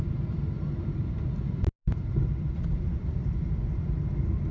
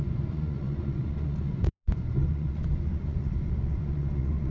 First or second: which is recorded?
first